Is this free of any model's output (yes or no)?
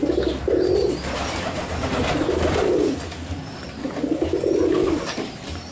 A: yes